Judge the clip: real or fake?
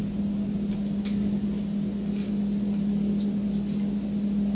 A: real